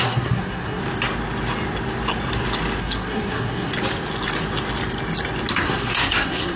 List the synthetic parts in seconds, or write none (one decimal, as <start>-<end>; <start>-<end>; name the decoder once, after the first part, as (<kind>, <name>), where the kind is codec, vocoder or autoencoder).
0.0-0.8 (codec, SNAC); 2.8-3.7; 5.5-6.6